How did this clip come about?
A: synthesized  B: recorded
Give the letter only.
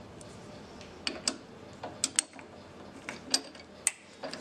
B